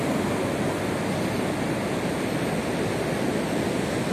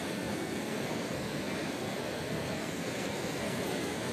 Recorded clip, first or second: first